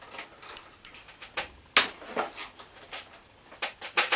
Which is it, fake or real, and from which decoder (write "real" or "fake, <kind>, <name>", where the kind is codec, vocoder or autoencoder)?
real